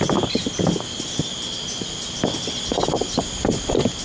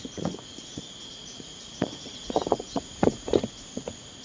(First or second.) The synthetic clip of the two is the second